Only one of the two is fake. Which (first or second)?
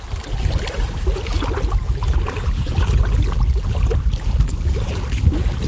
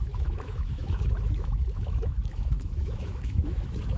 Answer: second